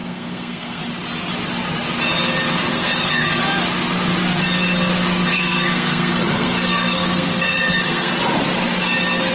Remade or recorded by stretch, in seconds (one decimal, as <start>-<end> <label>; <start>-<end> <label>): 0.0-0.8 remade; 0.8-2.7 recorded; 2.7-3.4 remade; 3.4-5.3 recorded; 5.3-8.1 remade; 8.1-9.3 recorded